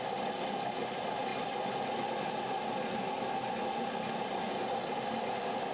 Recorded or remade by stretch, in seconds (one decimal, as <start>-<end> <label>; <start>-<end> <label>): 0.0-5.7 recorded